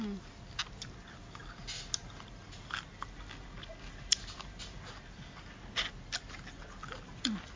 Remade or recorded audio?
recorded